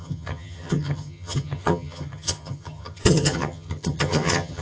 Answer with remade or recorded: remade